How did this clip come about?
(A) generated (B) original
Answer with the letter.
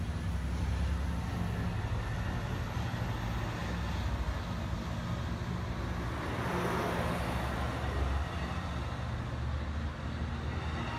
B